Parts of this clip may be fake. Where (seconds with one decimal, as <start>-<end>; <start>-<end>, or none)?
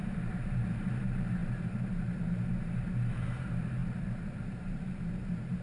0.0-5.6